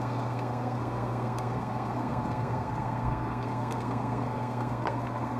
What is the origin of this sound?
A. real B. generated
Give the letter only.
B